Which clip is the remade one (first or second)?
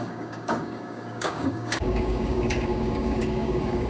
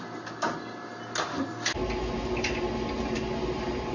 first